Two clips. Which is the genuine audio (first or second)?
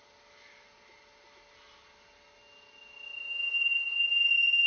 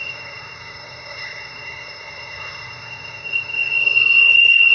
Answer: first